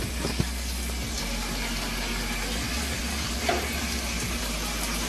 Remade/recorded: recorded